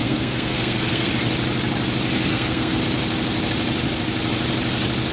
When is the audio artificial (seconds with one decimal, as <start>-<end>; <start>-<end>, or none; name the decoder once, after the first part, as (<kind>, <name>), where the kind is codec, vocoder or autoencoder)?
0.0-1.1 (codec, SNAC); 2.3-2.8